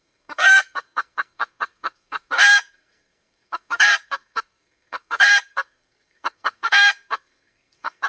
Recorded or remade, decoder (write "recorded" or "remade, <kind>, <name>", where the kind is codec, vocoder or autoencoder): remade, codec, SNAC